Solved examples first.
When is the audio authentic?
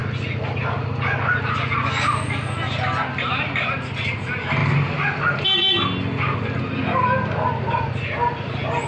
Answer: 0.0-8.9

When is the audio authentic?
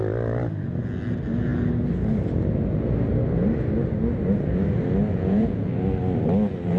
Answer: 0.0-5.1; 5.7-6.8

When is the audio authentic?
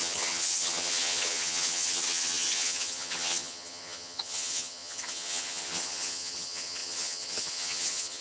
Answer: none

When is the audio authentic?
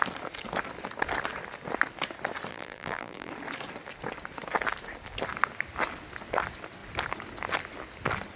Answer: 0.0-2.5; 3.3-8.4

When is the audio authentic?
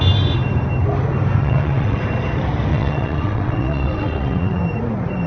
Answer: 0.0-1.4; 2.0-2.7; 4.6-5.3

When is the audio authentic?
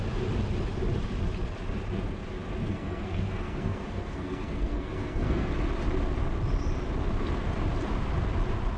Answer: 0.0-2.6; 5.5-8.8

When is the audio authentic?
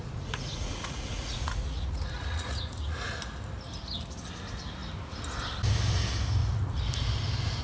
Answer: 3.1-6.4; 7.1-7.6